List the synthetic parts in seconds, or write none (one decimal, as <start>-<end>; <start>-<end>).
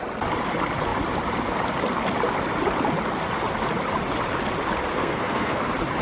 4.9-5.6